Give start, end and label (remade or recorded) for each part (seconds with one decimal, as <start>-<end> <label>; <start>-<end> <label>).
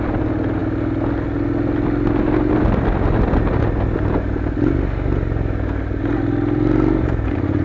0.0-6.1 recorded; 6.1-7.6 remade